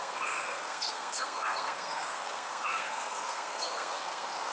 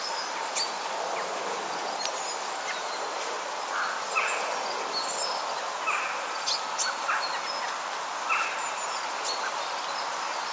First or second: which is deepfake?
first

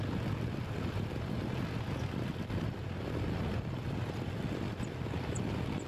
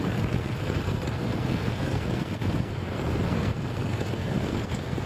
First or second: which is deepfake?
second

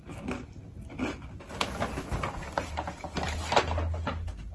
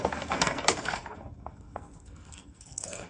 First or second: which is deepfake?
second